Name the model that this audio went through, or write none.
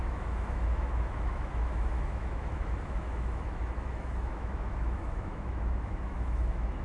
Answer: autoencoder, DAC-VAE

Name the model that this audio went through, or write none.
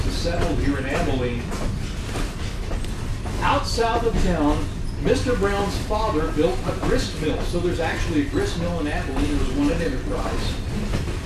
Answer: none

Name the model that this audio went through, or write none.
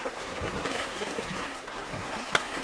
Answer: codec, SNAC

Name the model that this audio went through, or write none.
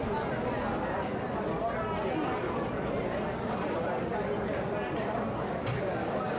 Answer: none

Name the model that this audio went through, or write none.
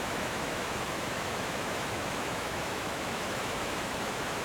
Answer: autoencoder, DAC-VAE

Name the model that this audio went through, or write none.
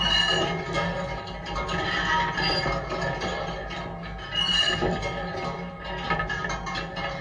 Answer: none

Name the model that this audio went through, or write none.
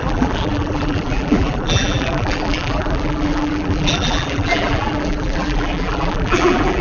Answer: vocoder, BigVGAN v2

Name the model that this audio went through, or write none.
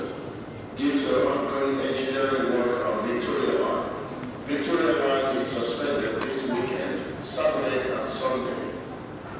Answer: none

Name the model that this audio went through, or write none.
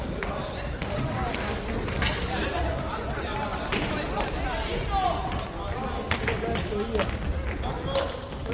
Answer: none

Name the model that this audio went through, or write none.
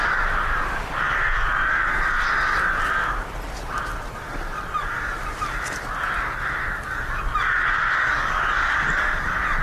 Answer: none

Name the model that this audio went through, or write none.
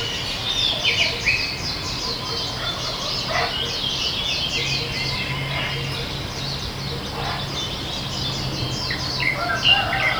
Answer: none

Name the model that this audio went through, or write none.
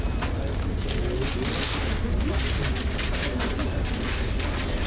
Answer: none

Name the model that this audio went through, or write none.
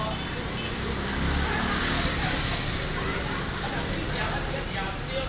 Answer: none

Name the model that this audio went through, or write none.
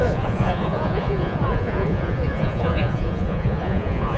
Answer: vocoder, Vocos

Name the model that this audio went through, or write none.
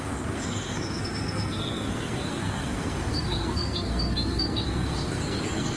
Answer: codec, SNAC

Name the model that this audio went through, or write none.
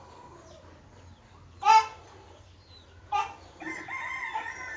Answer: none